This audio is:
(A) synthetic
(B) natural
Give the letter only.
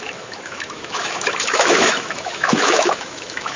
A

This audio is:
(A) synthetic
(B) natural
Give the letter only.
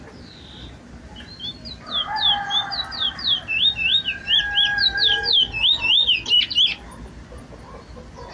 B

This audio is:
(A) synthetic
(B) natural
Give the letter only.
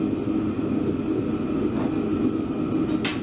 B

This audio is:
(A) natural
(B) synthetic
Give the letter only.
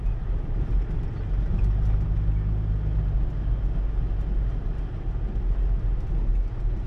A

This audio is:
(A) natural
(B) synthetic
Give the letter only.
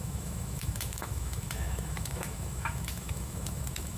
B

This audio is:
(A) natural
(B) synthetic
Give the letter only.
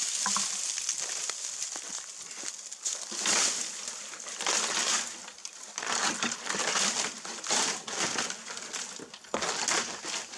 A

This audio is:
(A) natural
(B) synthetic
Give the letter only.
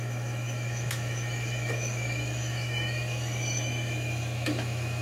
B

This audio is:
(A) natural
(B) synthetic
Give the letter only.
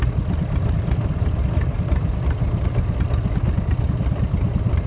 A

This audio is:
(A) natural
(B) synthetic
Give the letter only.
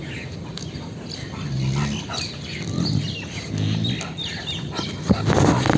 A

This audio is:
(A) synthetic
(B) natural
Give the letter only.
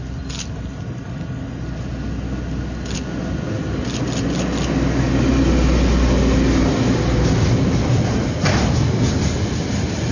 B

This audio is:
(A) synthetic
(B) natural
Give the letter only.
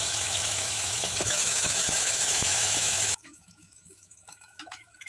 A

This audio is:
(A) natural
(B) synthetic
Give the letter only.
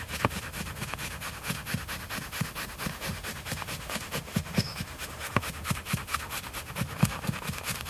B